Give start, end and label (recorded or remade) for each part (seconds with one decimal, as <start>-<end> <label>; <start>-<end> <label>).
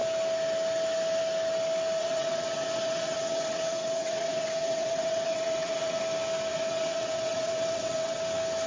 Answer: 0.0-2.0 recorded; 2.0-6.0 remade; 6.0-6.5 recorded; 6.5-8.2 remade; 8.2-8.7 recorded